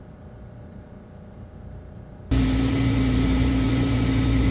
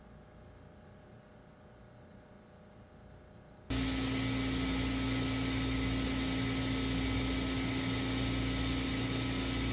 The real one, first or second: second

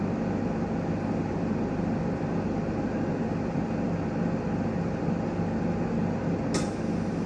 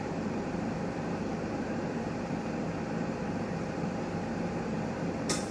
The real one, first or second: first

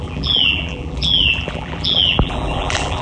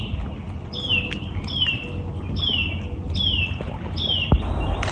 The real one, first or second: second